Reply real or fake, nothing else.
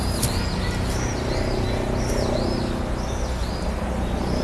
real